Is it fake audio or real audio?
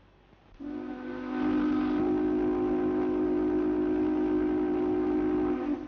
real